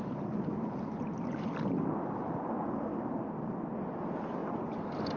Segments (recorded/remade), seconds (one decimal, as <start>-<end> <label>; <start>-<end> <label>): 0.0-5.2 recorded